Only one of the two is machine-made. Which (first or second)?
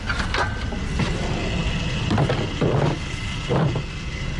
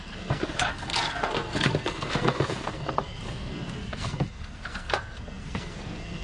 second